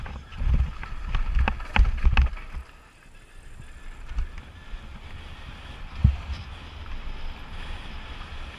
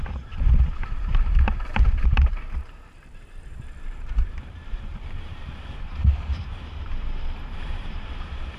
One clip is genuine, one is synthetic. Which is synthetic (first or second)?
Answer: second